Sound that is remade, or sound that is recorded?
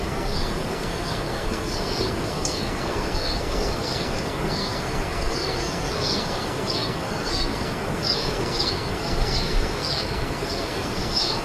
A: remade